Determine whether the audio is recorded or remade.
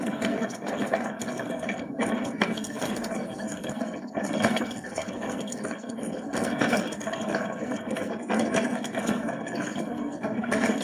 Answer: remade